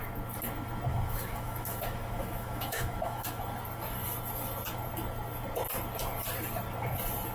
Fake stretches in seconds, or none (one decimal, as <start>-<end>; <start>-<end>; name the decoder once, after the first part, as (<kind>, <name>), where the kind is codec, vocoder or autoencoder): 0.9-3.4 (autoencoder, DAC-VAE)